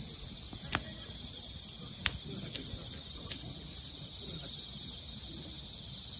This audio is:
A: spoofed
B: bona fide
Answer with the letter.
B